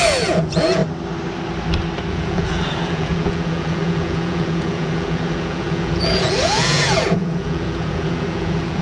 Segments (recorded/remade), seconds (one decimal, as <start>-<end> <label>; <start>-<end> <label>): 0.0-0.8 remade; 0.8-2.1 recorded; 2.1-8.8 remade